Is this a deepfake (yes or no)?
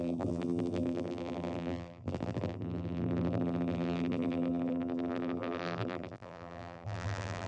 yes